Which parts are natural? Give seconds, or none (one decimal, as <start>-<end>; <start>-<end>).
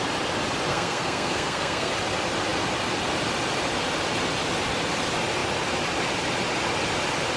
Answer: 0.0-0.7; 1.9-7.4